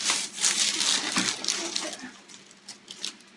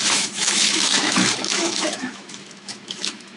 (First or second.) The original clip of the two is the first